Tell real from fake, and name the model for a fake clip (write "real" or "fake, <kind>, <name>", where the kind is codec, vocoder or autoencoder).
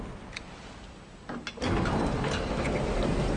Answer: real